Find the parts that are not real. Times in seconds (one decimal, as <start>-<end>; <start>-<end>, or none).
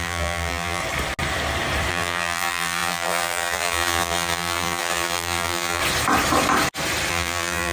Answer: 0.0-0.8; 1.9-5.8; 7.1-7.7